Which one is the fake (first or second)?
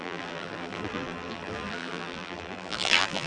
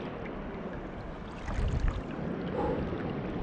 first